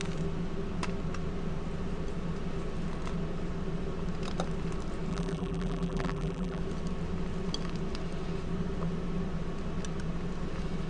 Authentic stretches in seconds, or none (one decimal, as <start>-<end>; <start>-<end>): 0.0-5.1; 6.6-10.9